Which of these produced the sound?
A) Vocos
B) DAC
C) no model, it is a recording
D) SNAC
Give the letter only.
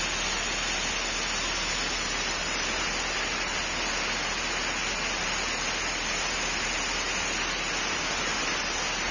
C